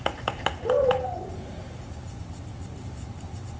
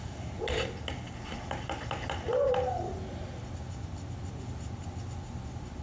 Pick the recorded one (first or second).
second